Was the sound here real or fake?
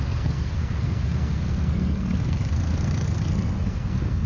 fake